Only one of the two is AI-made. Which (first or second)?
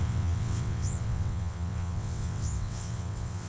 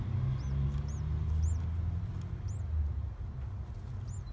first